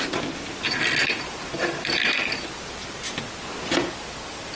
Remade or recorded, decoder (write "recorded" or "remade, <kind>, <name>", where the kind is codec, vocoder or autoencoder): recorded